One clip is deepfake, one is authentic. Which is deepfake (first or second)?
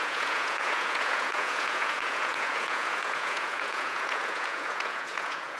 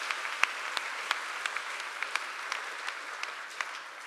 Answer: first